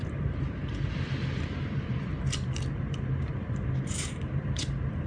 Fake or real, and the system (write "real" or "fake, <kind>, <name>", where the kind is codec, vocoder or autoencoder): fake, vocoder, BigVGAN v2